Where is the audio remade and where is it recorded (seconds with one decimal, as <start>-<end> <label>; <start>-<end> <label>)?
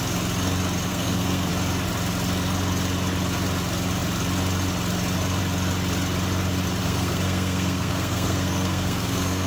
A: 0.0-0.9 recorded; 0.9-1.5 remade; 1.5-6.8 recorded; 6.8-9.5 remade